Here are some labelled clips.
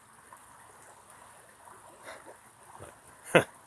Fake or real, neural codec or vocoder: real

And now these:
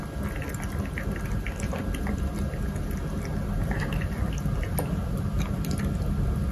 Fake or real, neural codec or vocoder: real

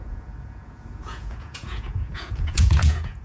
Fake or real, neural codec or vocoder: fake, vocoder, Vocos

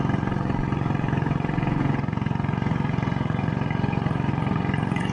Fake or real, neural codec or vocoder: fake, vocoder, Vocos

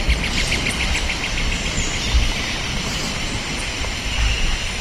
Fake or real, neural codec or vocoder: real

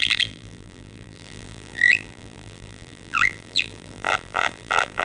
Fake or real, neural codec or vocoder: fake, vocoder, BigVGAN v2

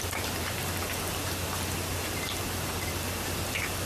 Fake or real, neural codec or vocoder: fake, vocoder, BigVGAN v2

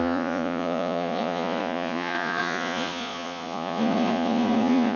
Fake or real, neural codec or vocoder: fake, vocoder, Vocos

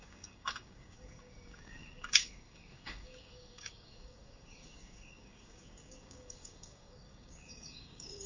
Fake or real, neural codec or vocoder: fake, codec, DAC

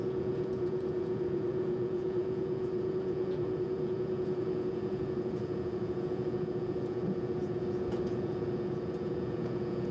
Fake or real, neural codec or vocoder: fake, vocoder, Vocos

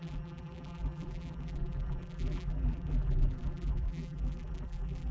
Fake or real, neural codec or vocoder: fake, vocoder, BigVGAN v2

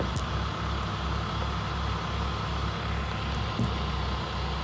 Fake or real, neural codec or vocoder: real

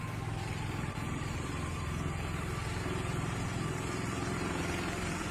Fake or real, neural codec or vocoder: fake, vocoder, BigVGAN v2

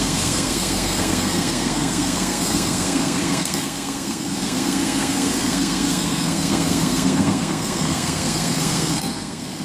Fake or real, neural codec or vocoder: fake, codec, SNAC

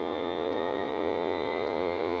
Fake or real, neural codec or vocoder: fake, vocoder, Vocos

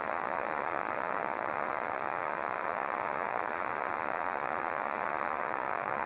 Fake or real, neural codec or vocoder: fake, vocoder, Vocos